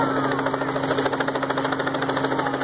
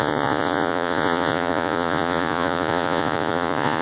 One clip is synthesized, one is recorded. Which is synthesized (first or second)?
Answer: second